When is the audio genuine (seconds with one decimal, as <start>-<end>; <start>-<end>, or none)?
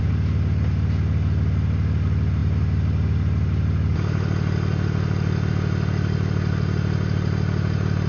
0.0-8.1